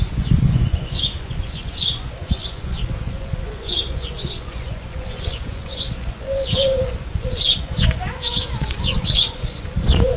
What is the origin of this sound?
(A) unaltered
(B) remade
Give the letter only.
B